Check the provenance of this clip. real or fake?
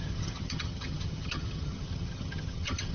fake